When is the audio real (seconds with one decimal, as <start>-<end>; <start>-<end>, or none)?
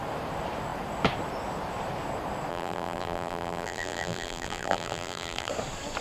0.0-2.5; 5.5-6.0